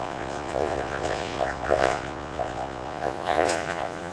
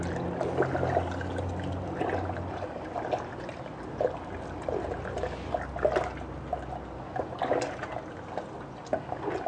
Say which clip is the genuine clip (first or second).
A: second